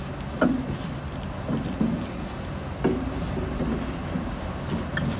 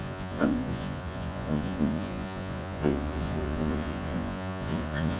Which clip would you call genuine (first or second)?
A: first